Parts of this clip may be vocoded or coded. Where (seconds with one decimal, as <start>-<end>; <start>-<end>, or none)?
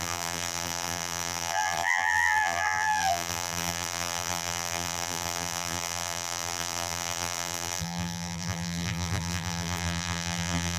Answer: 0.0-10.8